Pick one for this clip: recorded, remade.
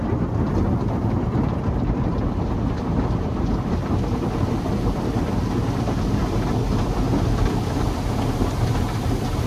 recorded